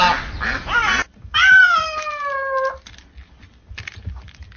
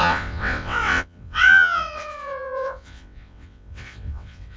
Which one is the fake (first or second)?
second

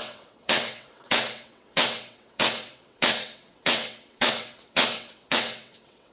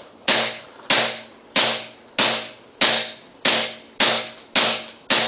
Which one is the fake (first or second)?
first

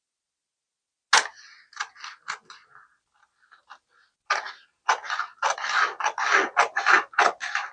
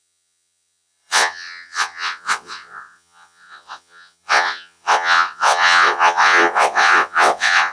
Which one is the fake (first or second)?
second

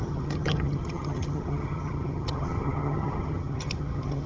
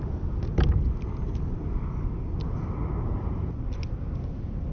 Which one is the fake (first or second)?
first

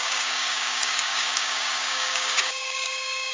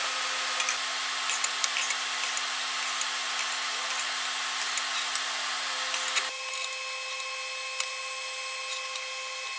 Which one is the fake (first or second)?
first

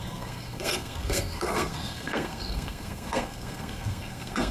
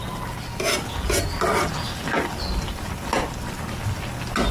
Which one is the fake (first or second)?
first